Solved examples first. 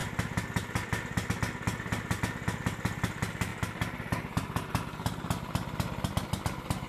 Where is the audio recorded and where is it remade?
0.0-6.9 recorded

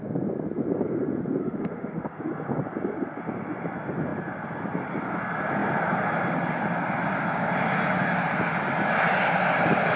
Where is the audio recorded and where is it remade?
0.0-1.4 recorded; 1.4-2.2 remade; 2.2-10.0 recorded

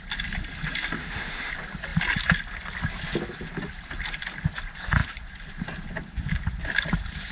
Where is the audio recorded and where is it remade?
0.0-1.0 recorded; 1.0-1.5 remade; 1.5-7.3 recorded

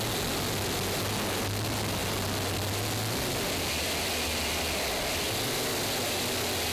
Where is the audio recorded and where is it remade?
0.0-6.7 recorded

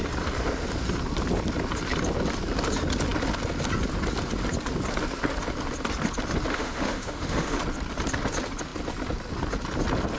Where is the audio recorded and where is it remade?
0.0-6.5 recorded; 6.5-7.6 remade; 7.6-10.2 recorded